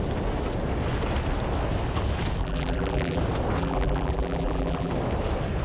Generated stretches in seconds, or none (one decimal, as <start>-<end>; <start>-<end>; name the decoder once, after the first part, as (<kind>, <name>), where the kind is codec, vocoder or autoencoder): 2.4-3.2 (vocoder, BigVGAN v2); 3.6-4.9